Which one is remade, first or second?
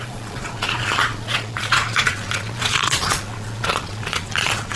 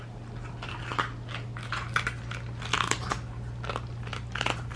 first